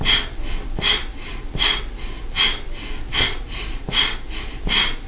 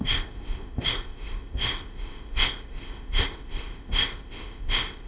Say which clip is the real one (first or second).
first